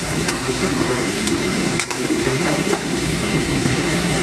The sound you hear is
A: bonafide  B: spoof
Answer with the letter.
B